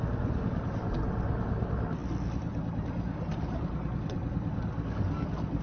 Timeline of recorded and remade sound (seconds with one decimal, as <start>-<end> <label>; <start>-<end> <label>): 0.0-5.6 recorded